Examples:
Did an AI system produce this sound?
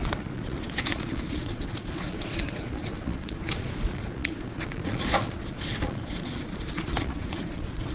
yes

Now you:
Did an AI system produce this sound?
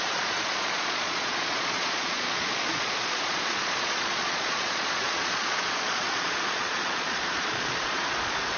yes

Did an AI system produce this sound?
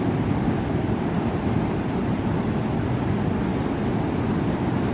no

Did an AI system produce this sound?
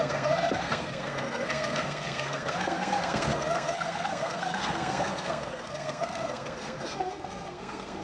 yes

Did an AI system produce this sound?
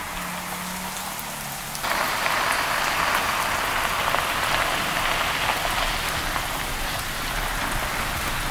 no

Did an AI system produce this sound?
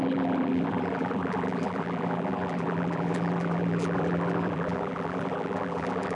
yes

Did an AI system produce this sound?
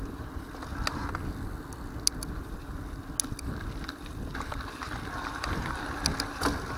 no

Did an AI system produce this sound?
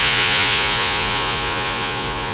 yes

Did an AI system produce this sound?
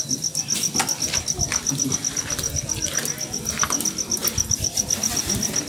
no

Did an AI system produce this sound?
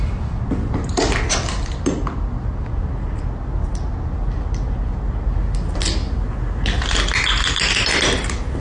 no